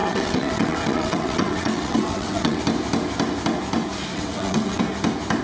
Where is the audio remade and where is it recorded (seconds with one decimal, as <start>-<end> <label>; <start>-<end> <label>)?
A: 0.0-2.6 remade; 2.6-4.1 recorded; 4.1-4.8 remade; 4.8-5.4 recorded